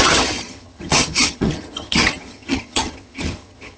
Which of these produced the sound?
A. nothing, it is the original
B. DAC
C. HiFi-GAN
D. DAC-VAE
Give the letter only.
C